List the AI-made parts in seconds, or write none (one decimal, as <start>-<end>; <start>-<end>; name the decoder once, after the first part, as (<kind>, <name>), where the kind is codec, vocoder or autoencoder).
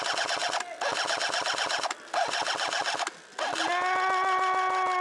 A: none